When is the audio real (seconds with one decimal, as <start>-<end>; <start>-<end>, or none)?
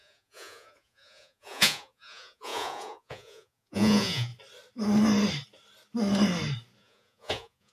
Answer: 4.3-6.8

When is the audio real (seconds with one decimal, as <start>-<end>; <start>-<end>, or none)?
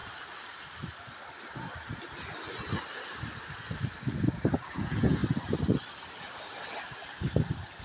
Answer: 0.0-4.7; 5.2-7.8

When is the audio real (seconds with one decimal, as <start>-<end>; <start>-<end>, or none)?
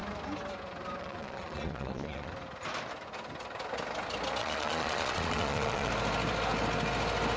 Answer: 0.0-1.0; 2.3-4.4; 5.9-7.4